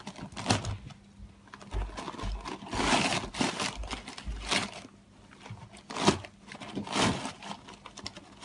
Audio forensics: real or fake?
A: real